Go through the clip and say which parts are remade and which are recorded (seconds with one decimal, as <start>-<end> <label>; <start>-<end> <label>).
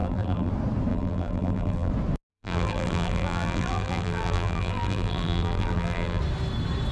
0.0-0.5 remade; 0.5-0.9 recorded; 0.9-1.9 remade; 1.9-2.3 recorded; 2.3-6.2 remade; 6.2-6.9 recorded